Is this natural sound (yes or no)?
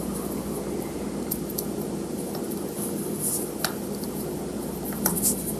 yes